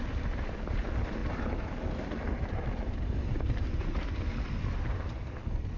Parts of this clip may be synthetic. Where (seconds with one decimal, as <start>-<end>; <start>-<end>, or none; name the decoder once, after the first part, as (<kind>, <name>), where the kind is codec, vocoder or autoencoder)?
none